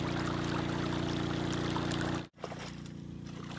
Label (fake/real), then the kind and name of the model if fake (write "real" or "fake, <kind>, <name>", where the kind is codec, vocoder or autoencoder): real